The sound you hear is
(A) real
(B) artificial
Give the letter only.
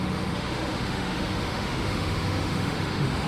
B